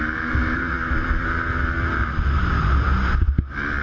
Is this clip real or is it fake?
real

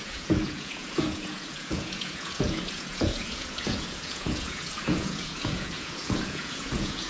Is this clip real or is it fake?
fake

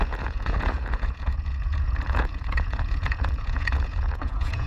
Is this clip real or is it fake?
fake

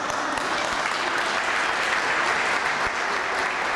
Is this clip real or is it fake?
real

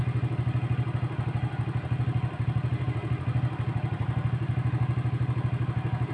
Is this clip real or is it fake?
real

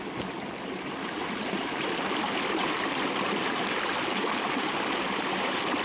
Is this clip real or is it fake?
real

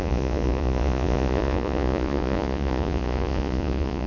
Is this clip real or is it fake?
fake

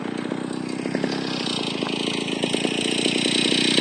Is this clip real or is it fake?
real